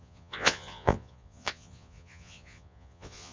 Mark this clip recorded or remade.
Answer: remade